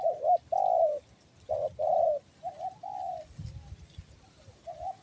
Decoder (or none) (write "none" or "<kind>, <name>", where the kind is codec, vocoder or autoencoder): none